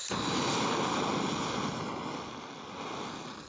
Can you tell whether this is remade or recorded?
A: recorded